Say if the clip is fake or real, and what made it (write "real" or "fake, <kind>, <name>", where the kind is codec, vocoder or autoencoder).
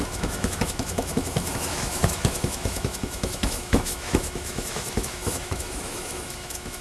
fake, autoencoder, DAC-VAE